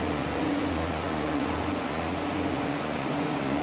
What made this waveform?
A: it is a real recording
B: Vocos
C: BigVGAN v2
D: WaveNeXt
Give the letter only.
B